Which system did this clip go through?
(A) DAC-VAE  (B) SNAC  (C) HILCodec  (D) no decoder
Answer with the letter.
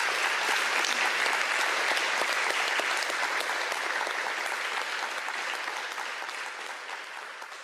D